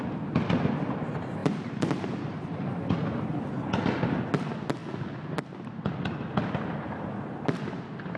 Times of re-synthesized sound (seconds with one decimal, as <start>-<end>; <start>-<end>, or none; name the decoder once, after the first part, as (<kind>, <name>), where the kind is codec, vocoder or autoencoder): 1.4-3.2 (vocoder, BigVGAN v2)